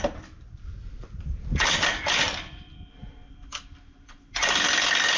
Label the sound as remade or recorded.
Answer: recorded